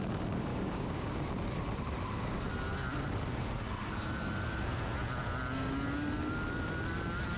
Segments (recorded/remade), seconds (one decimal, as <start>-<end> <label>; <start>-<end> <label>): 0.0-0.5 recorded; 0.5-1.3 remade; 1.3-7.4 recorded